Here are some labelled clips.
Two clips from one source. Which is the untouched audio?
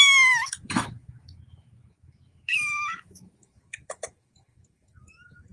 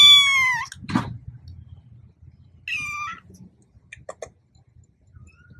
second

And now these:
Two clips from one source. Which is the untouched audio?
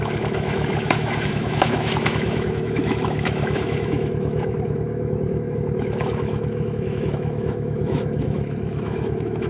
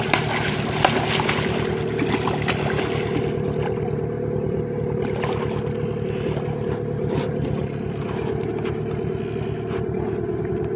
second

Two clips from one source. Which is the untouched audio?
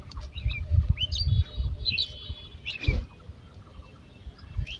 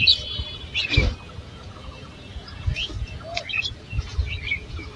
first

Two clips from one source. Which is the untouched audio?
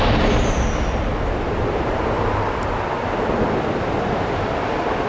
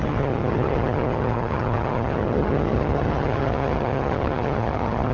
first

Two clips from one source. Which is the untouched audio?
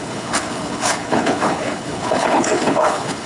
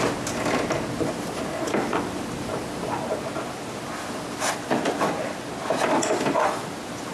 second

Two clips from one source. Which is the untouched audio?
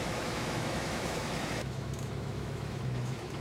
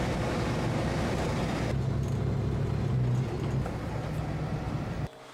second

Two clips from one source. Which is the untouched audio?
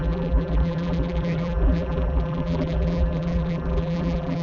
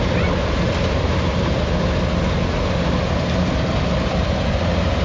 second